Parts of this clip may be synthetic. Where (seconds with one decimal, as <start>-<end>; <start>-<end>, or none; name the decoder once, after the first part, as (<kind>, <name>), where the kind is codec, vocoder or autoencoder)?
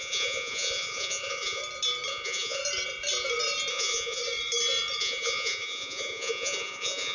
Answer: 0.0-1.6 (vocoder, Vocos); 2.1-2.6; 3.7-4.2; 5.0-7.1